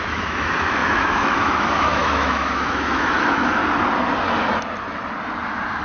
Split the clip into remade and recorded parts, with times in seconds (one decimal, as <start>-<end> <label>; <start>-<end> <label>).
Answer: 0.0-3.6 remade; 3.6-5.8 recorded